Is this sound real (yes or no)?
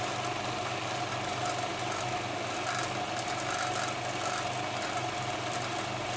yes